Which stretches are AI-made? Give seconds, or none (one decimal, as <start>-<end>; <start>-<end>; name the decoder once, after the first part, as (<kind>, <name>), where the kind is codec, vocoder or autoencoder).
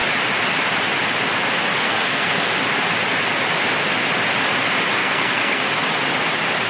1.8-2.5 (codec, SNAC); 5.0-5.6